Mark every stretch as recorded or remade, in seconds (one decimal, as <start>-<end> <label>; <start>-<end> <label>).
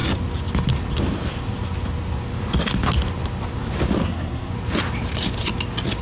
0.0-4.0 recorded; 4.0-4.5 remade; 4.5-6.0 recorded